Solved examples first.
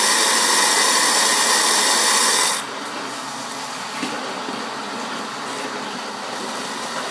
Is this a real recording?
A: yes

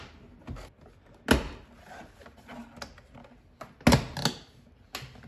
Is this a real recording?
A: yes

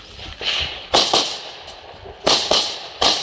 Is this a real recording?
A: yes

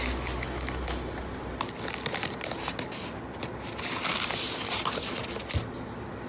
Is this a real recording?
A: yes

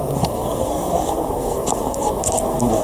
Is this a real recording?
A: no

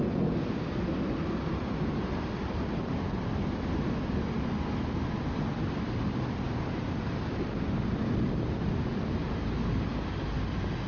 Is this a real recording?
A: yes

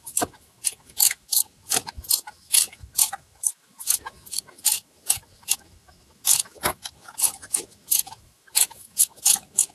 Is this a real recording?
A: no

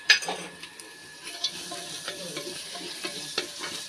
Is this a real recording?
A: no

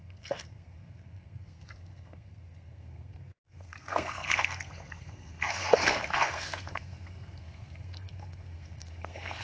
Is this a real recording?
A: no